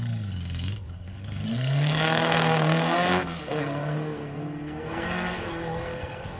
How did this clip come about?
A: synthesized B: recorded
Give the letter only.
A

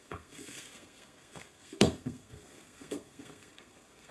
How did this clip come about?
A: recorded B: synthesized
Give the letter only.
B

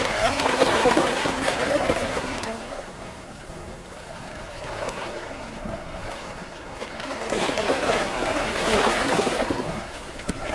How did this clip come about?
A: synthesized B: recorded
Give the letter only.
A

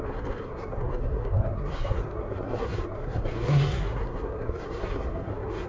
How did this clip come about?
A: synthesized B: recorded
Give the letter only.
A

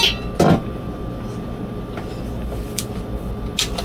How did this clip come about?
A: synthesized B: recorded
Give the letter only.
B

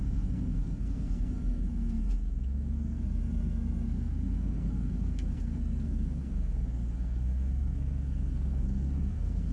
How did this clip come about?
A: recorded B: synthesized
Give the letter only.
B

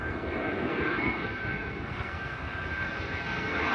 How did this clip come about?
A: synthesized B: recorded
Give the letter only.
A